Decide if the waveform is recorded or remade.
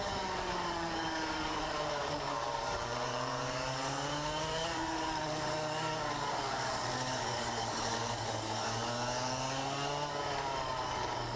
remade